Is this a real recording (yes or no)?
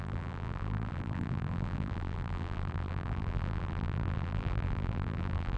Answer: no